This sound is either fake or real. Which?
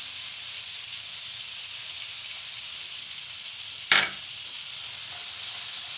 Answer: fake